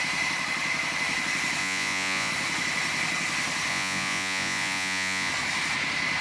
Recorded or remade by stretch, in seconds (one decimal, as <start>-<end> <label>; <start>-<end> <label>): 0.0-1.6 recorded; 1.6-2.3 remade; 2.3-3.7 recorded; 3.7-5.3 remade; 5.3-6.2 recorded